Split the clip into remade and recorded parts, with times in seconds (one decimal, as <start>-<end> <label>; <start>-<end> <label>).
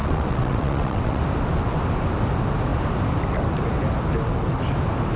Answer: 0.0-1.2 remade; 1.2-5.2 recorded